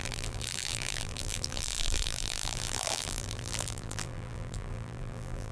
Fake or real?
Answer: fake